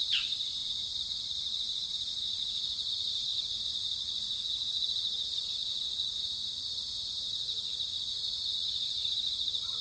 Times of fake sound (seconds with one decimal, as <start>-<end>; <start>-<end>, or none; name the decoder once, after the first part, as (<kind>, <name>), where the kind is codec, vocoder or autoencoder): 0.0-9.8 (vocoder, Vocos)